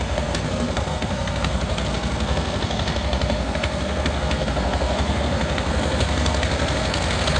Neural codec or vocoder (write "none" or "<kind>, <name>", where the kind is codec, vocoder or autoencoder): codec, SNAC